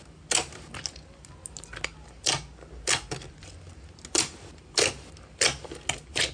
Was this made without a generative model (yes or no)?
yes